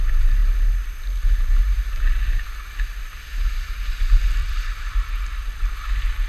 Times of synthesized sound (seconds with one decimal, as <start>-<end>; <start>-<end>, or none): 4.4-6.3